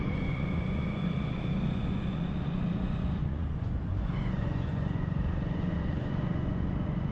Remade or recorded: remade